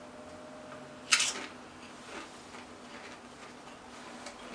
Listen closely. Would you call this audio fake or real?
real